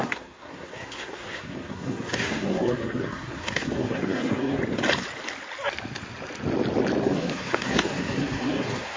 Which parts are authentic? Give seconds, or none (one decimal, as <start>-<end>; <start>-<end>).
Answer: 4.6-7.0